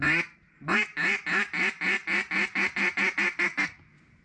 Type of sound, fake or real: real